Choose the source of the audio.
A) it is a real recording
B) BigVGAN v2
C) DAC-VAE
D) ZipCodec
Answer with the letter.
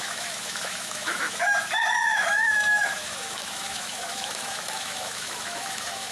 C